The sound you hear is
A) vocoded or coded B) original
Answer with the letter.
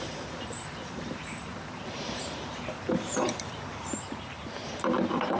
A